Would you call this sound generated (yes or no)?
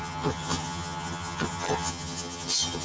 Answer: yes